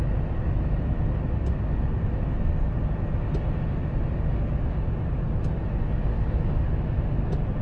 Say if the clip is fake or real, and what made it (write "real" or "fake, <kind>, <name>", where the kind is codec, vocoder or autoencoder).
real